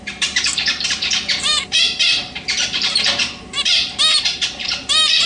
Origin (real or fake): fake